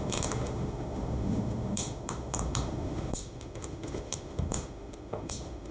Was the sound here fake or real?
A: fake